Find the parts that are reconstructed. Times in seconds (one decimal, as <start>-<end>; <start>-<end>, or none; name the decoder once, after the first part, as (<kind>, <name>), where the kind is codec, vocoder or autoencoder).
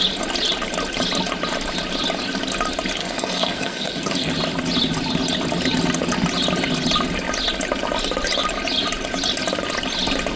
3.0-4.3 (codec, SNAC)